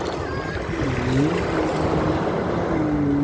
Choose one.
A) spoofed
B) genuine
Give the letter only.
B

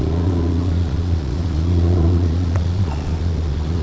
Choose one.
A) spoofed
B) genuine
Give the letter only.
A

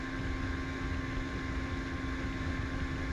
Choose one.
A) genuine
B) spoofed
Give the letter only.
A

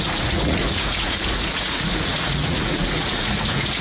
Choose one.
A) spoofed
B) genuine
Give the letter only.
A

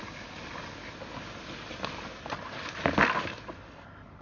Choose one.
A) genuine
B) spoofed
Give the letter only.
A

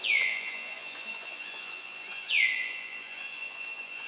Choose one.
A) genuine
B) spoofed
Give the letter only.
B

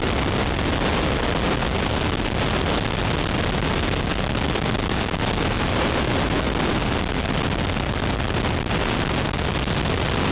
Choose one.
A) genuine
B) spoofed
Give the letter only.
A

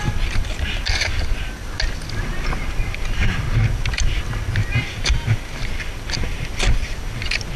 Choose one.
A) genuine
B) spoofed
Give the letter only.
A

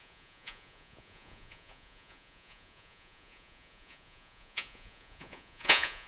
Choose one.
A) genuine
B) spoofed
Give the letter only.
B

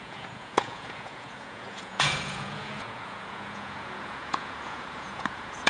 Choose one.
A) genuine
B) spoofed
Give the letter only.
B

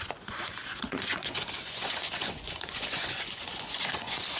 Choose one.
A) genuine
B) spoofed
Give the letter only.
B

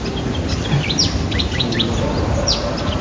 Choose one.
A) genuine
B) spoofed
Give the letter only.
A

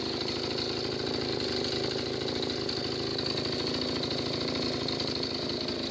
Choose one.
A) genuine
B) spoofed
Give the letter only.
A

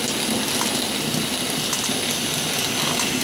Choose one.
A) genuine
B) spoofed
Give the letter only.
A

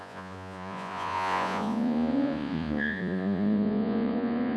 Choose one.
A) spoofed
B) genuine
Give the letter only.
A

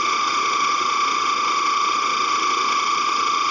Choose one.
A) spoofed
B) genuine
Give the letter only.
B